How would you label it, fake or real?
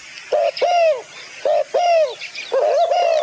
real